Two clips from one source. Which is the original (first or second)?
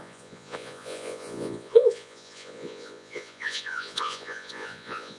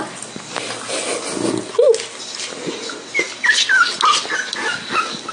second